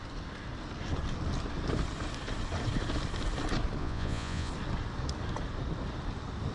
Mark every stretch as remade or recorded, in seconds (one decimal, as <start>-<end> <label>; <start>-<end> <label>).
0.0-3.8 recorded; 3.8-4.5 remade; 4.5-6.5 recorded